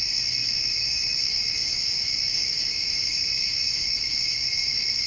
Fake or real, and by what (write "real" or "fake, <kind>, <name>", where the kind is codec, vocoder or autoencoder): fake, autoencoder, DAC-VAE